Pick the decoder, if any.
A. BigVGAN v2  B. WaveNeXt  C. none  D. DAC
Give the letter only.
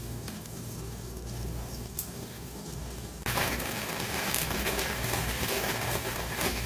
D